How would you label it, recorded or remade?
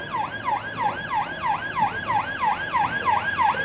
recorded